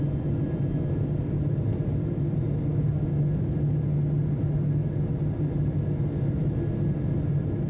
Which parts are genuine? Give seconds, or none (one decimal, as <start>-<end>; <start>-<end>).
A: 0.0-2.7; 3.2-7.7